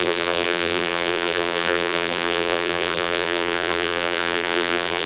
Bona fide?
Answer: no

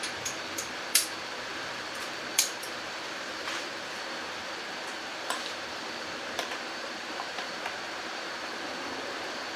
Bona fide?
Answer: no